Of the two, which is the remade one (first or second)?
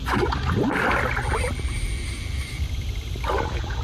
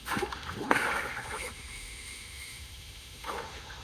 second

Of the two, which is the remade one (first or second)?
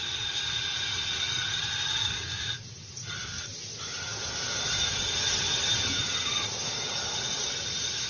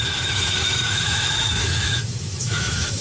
second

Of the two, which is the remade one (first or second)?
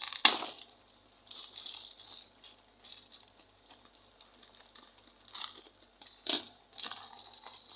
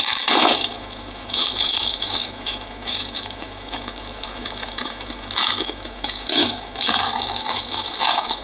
second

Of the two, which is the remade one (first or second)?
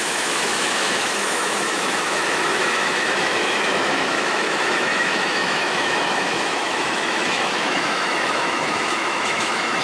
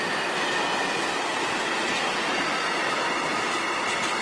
first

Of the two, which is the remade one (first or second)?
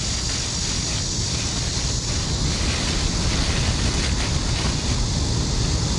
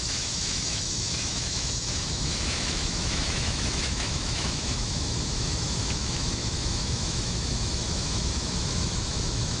second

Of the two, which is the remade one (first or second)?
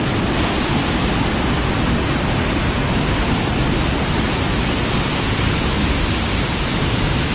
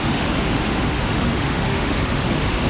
second